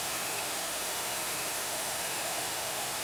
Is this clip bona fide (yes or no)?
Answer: no